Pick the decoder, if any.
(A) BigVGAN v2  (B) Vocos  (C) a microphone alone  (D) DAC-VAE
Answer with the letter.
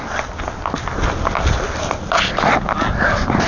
C